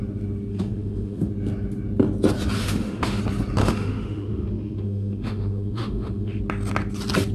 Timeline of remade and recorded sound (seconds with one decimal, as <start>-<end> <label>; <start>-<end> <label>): 0.0-0.5 recorded; 0.5-1.3 remade; 1.3-2.6 recorded; 2.6-3.2 remade; 3.2-3.6 recorded; 3.6-6.4 remade; 6.4-7.3 recorded